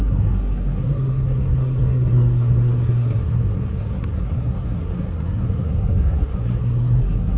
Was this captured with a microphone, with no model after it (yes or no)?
no